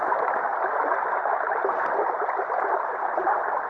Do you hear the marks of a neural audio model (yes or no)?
no